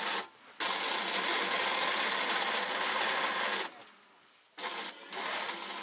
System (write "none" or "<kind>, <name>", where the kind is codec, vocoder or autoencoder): none